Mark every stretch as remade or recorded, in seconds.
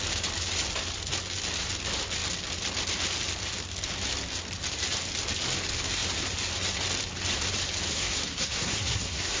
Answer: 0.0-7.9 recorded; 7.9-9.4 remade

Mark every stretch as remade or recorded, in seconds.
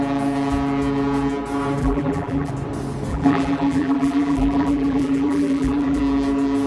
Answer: 0.0-1.8 recorded; 1.8-2.5 remade; 2.5-3.1 recorded; 3.1-6.0 remade; 6.0-6.7 recorded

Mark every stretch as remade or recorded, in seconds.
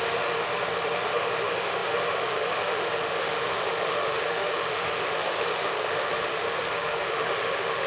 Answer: 0.0-7.9 remade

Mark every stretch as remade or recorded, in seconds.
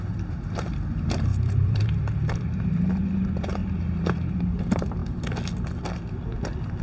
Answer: 0.0-5.0 remade; 5.0-6.8 recorded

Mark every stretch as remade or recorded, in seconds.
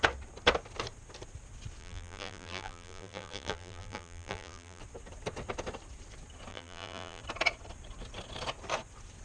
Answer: 0.0-1.8 recorded; 1.8-4.8 remade; 4.8-6.5 recorded; 6.5-7.2 remade; 7.2-9.2 recorded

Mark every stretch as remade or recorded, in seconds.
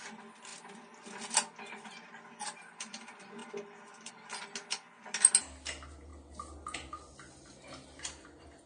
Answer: 0.0-8.7 recorded